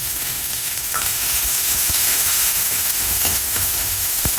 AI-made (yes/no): yes